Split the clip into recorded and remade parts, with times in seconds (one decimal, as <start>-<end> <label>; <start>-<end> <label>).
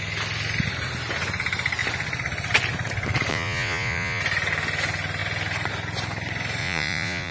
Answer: 0.0-3.3 recorded; 3.3-4.2 remade; 4.2-6.6 recorded; 6.6-7.3 remade